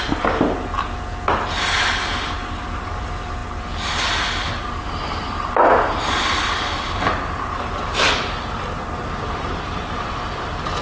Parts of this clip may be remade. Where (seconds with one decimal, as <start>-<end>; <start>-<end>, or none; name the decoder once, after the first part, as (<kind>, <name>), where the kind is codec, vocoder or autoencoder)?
none